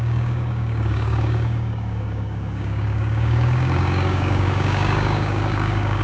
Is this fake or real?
fake